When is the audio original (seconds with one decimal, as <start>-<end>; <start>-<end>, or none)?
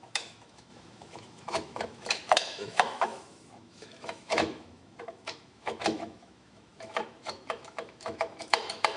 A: none